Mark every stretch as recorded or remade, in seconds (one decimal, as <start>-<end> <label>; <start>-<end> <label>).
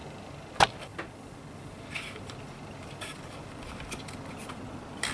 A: 0.0-5.1 recorded